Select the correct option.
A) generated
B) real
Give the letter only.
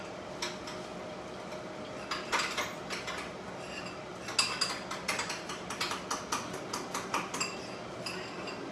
B